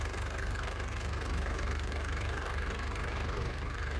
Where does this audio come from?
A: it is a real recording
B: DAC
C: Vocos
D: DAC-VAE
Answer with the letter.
B